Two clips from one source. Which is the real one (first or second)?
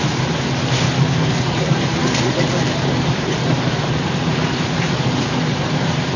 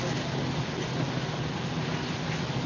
second